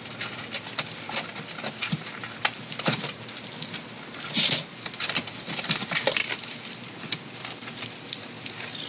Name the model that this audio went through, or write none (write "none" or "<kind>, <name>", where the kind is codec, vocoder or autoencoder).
none